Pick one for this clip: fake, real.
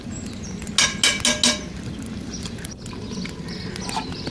real